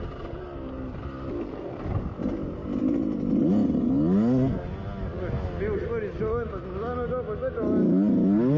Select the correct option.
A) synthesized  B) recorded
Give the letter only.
B